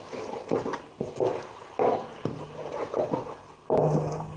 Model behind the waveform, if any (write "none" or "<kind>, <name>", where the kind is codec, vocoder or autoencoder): vocoder, BigVGAN v2